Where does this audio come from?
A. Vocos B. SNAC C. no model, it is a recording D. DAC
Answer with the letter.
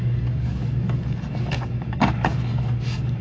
D